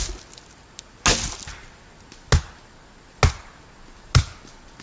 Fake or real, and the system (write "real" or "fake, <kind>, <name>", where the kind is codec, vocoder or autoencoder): real